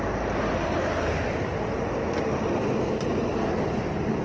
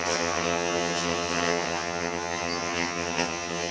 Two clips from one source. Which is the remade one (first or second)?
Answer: second